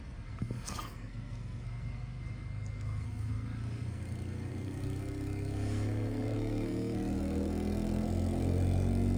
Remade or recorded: remade